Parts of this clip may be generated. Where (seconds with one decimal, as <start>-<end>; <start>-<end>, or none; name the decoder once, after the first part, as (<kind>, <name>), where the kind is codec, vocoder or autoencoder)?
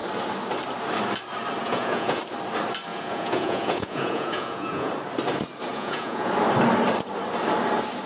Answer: 1.6-2.2 (vocoder, Vocos); 2.9-4.9; 5.7-6.3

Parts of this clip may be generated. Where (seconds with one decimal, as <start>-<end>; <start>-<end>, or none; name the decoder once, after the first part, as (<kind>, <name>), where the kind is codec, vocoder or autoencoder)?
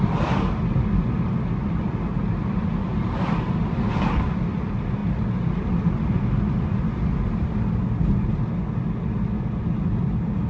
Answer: none